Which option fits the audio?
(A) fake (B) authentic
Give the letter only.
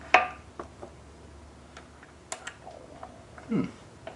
B